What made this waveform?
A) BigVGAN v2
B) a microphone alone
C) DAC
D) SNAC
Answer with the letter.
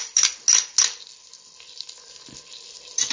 B